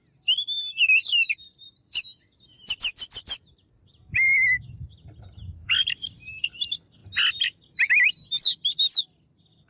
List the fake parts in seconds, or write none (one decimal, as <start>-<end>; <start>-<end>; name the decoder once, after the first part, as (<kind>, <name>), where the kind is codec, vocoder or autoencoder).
1.0-2.7 (vocoder, BigVGAN v2)